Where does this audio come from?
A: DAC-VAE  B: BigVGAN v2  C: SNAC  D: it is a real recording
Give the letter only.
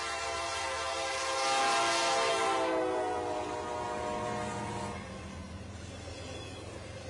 D